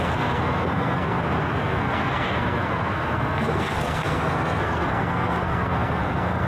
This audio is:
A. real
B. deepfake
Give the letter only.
B